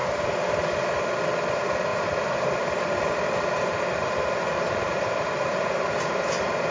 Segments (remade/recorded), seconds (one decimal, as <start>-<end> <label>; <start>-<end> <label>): 0.0-1.5 recorded; 1.5-6.7 remade